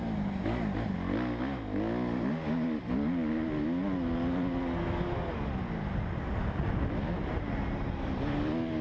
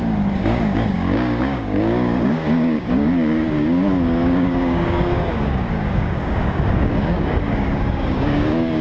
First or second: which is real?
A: first